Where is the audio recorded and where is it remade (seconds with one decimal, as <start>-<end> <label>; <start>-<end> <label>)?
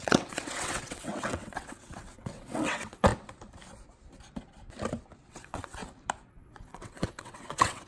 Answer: 0.0-3.1 remade; 3.1-5.3 recorded; 5.3-5.8 remade; 5.8-6.3 recorded; 6.3-7.9 remade